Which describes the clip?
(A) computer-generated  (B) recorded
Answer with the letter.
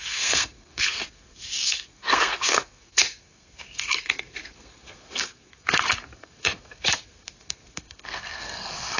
A